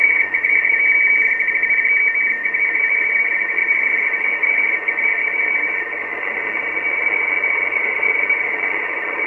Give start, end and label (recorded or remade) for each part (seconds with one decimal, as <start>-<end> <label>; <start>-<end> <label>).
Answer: 0.0-0.8 remade; 0.8-2.4 recorded; 2.4-9.3 remade